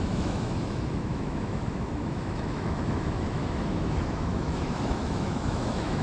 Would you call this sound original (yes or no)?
no